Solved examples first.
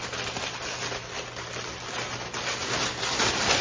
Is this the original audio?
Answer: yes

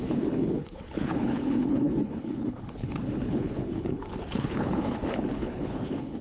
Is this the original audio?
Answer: no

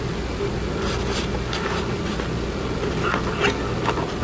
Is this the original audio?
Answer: yes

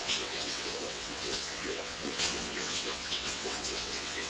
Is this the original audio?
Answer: no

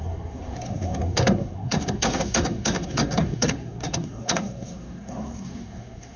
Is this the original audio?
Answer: no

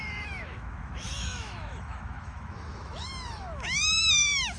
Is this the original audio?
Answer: no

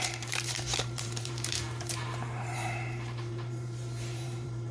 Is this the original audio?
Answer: no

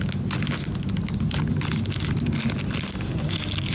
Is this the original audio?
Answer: yes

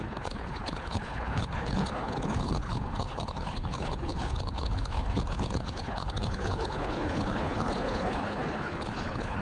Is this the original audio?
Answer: no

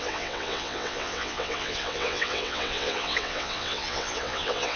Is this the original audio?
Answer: no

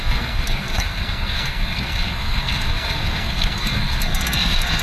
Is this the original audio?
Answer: no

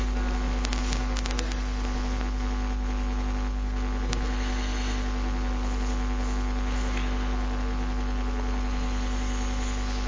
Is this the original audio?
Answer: yes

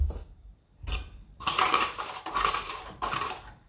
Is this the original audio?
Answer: no